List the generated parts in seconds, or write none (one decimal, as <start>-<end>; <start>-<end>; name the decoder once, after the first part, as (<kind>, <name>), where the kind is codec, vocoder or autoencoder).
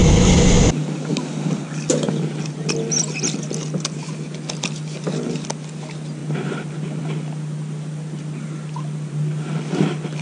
none